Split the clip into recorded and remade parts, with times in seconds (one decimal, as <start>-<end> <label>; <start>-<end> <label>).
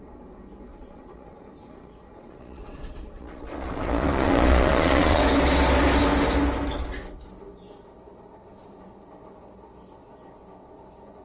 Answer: 0.0-0.7 recorded; 0.7-5.2 remade; 5.2-11.2 recorded